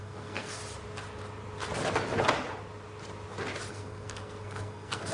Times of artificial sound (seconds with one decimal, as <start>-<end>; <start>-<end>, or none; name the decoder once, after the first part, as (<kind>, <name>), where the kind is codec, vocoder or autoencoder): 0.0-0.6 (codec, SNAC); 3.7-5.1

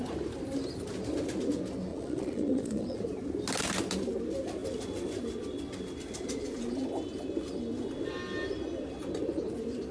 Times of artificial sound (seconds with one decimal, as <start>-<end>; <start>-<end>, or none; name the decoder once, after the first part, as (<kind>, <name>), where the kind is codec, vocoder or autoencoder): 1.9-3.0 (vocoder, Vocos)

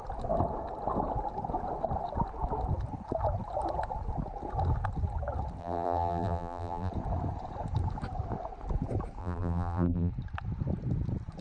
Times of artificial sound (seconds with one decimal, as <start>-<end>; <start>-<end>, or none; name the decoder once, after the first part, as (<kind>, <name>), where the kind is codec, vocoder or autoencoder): 5.6-6.9 (vocoder, BigVGAN v2); 9.2-10.1